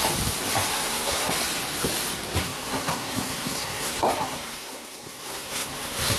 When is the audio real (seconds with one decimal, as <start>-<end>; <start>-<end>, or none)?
0.0-0.7; 1.3-2.4